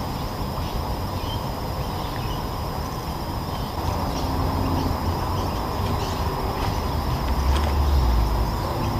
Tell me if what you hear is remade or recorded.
recorded